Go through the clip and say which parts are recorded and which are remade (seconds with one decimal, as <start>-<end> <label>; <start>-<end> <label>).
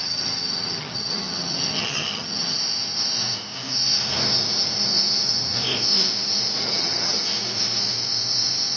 0.0-2.6 remade; 2.6-6.6 recorded; 6.6-7.2 remade; 7.2-8.8 recorded